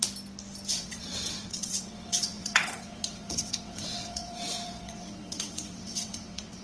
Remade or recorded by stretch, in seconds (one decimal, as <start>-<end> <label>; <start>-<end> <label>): 0.0-0.7 recorded; 0.7-6.6 remade